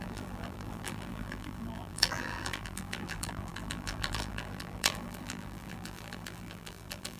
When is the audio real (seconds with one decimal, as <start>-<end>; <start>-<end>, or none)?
none